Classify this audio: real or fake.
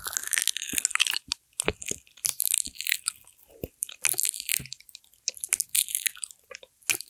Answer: real